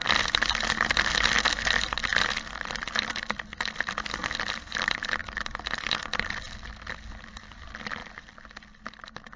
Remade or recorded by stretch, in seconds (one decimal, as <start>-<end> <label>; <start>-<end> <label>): 0.0-2.1 recorded; 2.1-3.0 remade; 3.0-8.0 recorded; 8.0-9.4 remade